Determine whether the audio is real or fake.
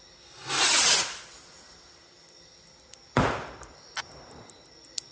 real